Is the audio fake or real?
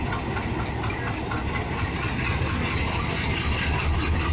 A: real